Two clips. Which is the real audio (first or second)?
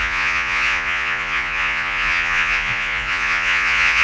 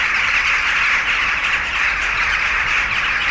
second